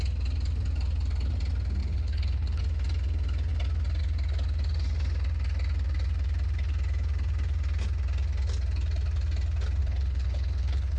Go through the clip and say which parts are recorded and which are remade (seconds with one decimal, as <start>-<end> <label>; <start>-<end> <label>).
0.0-1.8 recorded; 1.8-2.6 remade; 2.6-9.8 recorded; 9.8-11.0 remade